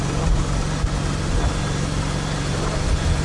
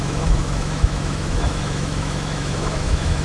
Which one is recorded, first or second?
first